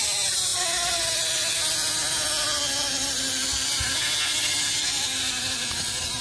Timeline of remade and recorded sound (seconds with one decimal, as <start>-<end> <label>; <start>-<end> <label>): 0.0-6.2 recorded